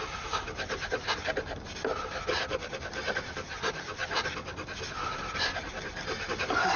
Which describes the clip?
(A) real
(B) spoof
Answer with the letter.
A